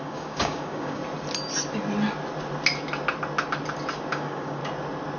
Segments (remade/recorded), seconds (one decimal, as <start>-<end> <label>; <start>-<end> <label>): 0.0-1.0 remade; 1.0-4.1 recorded; 4.1-4.6 remade; 4.6-5.2 recorded